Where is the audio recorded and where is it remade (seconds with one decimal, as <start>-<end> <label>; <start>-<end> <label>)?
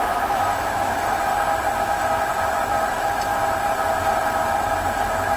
0.0-1.3 remade; 1.3-1.8 recorded; 1.8-2.3 remade; 2.3-2.9 recorded; 2.9-3.4 remade; 3.4-4.9 recorded; 4.9-5.4 remade